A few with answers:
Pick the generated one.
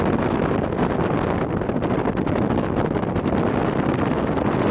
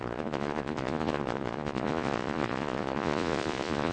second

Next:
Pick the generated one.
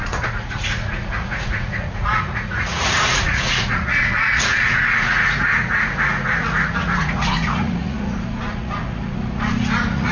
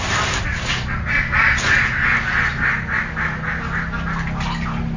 first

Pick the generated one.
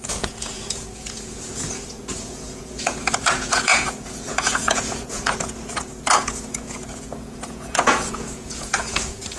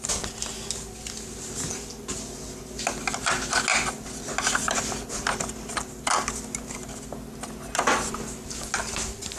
first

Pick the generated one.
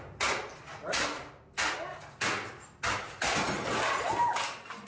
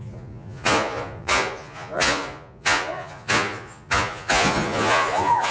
second